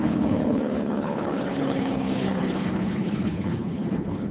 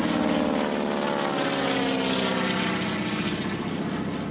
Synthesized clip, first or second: first